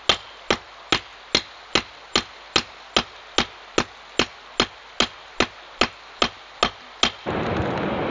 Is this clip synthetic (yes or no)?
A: no